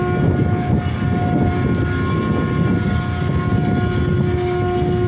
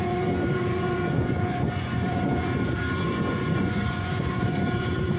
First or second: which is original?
first